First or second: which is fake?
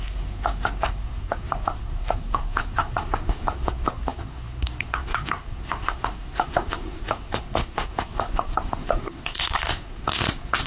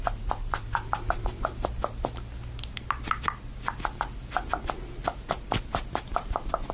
first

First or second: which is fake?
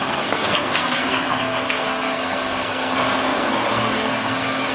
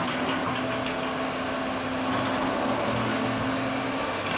first